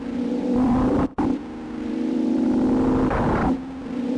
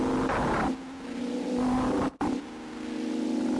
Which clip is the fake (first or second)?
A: first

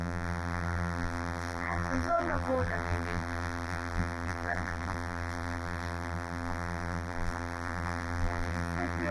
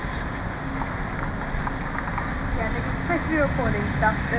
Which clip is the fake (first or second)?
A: first